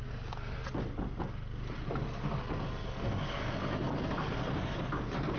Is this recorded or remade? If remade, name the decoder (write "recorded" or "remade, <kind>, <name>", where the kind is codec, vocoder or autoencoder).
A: recorded